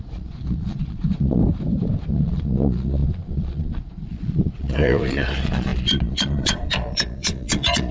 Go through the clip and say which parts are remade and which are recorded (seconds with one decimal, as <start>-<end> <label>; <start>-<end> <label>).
0.0-1.4 remade; 1.4-2.1 recorded; 2.1-7.9 remade